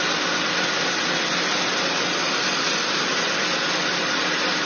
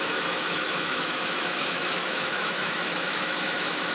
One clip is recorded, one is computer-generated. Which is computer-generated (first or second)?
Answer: second